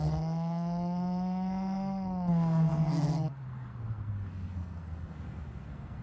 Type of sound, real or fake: fake